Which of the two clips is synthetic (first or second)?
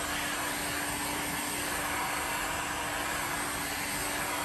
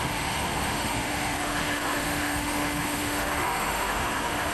second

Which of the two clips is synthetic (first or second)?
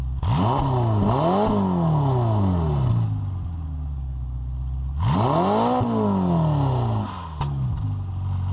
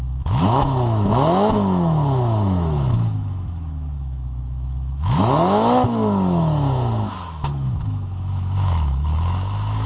second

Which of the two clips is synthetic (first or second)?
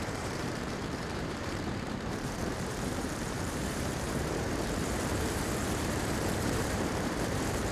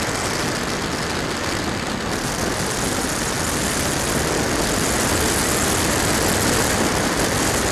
first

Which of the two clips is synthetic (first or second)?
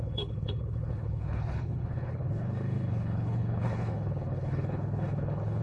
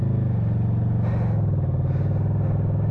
first